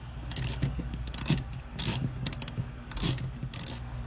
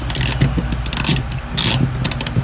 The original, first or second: second